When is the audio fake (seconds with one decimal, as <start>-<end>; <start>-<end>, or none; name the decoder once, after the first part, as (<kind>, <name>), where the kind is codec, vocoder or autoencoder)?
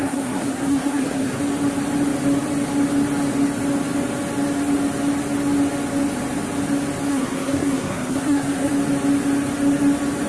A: 0.0-1.4 (codec, SNAC); 7.1-8.7